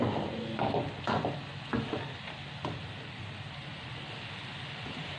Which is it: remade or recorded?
recorded